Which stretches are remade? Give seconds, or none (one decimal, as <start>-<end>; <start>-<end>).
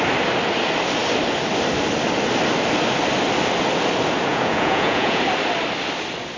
4.3-5.2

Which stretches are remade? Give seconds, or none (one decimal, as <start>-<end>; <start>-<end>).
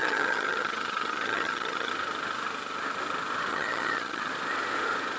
0.0-1.9; 3.5-4.3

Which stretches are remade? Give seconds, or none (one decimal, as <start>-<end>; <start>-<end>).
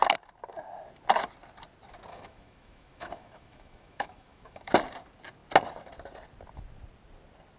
2.1-4.7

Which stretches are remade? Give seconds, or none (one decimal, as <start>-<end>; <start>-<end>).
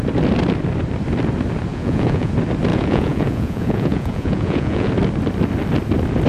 1.7-2.3; 2.7-4.9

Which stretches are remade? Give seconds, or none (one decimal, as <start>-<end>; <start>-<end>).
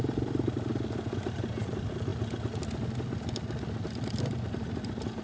none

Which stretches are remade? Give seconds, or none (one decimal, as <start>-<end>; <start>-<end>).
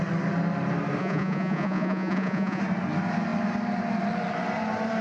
1.0-2.6